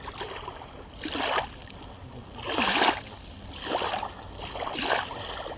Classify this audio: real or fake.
real